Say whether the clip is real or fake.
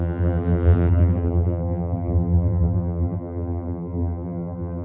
fake